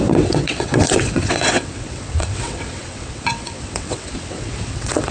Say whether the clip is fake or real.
fake